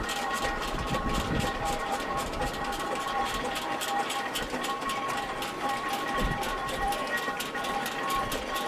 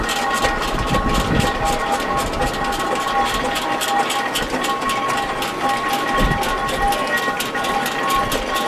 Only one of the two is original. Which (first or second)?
second